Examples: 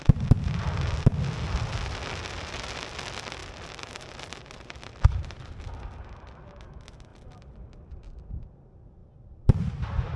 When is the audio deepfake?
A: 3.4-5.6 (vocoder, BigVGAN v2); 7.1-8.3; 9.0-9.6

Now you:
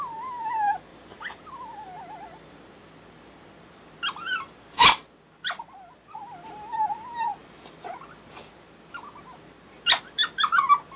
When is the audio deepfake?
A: 0.9-1.4 (vocoder, BigVGAN v2); 7.4-7.9

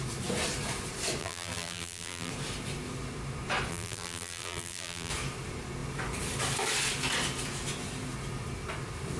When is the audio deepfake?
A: 1.2-2.3 (vocoder, BigVGAN v2); 3.7-5.1

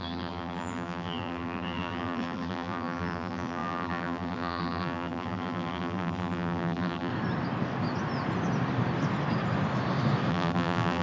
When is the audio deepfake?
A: 0.0-7.1 (vocoder, BigVGAN v2); 10.3-11.0

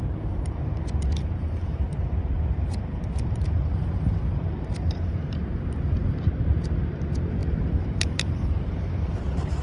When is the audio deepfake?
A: 0.0-9.6 (vocoder, BigVGAN v2)

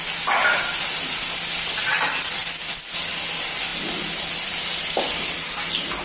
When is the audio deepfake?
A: none

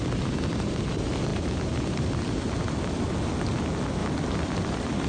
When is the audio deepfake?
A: 1.3-2.3 (vocoder, BigVGAN v2); 4.0-5.1

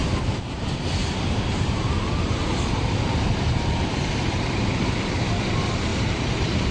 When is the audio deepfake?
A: 1.0-5.0 (vocoder, BigVGAN v2); 5.9-6.7